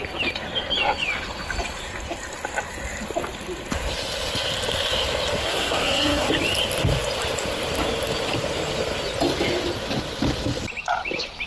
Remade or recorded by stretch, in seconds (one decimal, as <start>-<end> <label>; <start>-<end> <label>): 0.0-5.4 recorded; 5.4-6.3 remade; 6.3-11.5 recorded